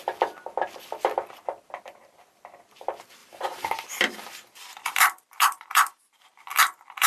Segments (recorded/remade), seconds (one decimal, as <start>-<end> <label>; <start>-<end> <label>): 0.0-3.2 recorded; 3.2-7.1 remade

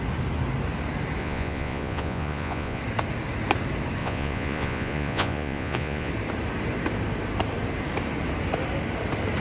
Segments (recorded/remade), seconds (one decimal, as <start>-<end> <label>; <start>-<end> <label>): 0.0-1.2 recorded; 1.2-2.8 remade; 2.8-4.0 recorded; 4.0-6.1 remade; 6.1-9.4 recorded

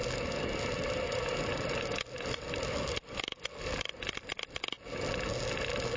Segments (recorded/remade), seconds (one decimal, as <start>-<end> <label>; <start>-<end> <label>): 0.0-6.0 recorded

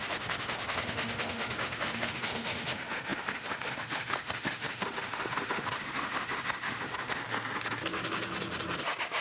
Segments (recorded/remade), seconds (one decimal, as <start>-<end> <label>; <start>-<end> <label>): 0.0-7.2 remade; 7.2-9.2 recorded